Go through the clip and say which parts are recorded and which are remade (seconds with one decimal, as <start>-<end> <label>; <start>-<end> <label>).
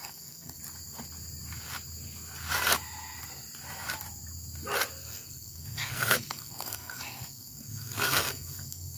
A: 0.0-0.6 remade; 0.6-5.0 recorded; 5.0-9.0 remade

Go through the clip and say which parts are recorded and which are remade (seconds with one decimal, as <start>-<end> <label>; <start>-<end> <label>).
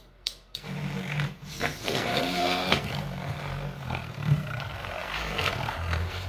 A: 0.0-6.3 remade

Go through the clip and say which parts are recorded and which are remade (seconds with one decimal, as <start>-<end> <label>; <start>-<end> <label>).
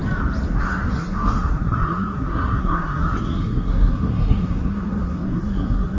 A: 0.0-0.6 recorded; 0.6-6.0 remade